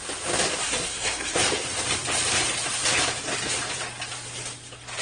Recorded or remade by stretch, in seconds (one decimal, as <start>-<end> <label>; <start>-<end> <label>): 0.0-0.6 recorded; 0.6-1.4 remade; 1.4-5.0 recorded